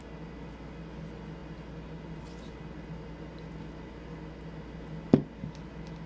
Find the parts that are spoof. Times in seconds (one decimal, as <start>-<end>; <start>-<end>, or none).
none